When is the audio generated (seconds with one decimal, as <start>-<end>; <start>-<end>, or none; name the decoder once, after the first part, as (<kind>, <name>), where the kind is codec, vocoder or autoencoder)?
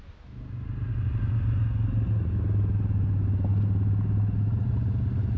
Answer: none